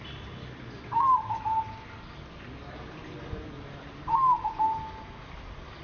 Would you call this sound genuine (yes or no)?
yes